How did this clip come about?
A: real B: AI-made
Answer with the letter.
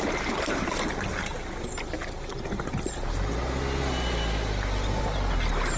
A